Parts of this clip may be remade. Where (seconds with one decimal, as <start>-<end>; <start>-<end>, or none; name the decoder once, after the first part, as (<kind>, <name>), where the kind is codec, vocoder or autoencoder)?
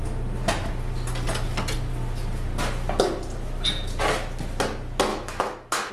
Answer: 5.1-5.9 (autoencoder, DAC-VAE)